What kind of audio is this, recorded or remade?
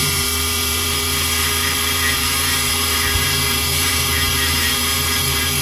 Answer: remade